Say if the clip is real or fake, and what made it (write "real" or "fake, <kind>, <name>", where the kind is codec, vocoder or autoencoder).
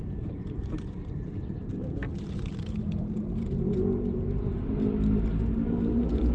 fake, vocoder, BigVGAN v2